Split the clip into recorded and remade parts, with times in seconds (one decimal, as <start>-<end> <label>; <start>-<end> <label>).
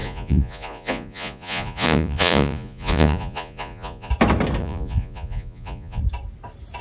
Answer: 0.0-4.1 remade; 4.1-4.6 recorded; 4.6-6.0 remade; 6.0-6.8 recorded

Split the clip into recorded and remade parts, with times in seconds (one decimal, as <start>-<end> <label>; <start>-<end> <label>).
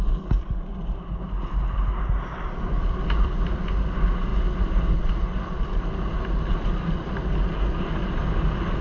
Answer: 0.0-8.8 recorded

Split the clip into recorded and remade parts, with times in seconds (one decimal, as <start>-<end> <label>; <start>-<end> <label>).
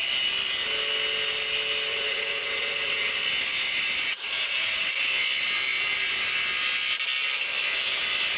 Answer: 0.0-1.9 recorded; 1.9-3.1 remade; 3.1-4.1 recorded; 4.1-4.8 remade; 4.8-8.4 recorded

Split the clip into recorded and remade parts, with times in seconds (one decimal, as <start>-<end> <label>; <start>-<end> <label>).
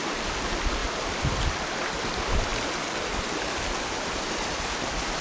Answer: 0.0-5.2 recorded